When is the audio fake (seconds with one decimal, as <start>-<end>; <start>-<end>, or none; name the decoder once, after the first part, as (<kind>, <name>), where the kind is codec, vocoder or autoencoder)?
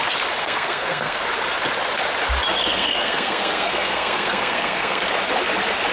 0.4-1.2 (codec, SNAC); 2.6-5.0